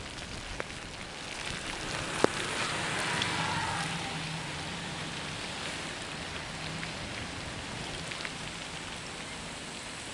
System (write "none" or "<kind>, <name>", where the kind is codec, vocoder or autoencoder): none